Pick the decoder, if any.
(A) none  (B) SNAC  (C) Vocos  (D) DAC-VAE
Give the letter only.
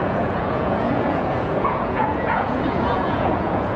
C